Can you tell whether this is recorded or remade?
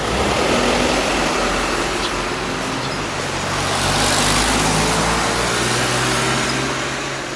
recorded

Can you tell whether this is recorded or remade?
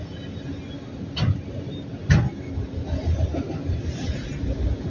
recorded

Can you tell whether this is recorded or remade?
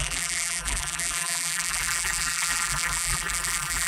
remade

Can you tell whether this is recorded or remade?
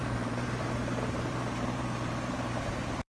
remade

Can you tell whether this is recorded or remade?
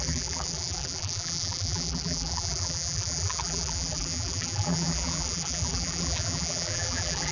remade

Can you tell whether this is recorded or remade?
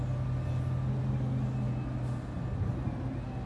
recorded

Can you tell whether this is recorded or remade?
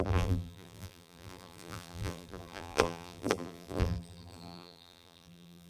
remade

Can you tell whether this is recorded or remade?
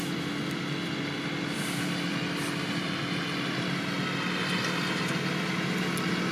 recorded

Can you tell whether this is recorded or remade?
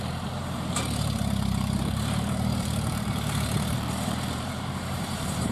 remade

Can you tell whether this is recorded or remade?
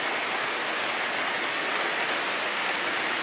recorded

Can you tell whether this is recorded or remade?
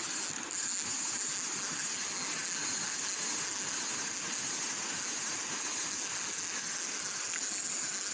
recorded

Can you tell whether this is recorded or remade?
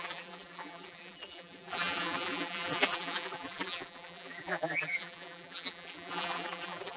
remade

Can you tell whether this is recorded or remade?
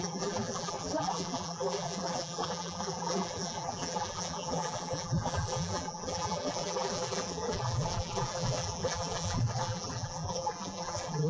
remade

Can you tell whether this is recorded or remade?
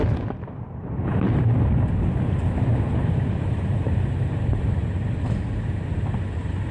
recorded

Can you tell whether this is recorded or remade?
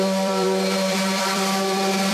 remade